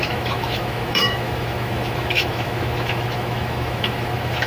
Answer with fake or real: fake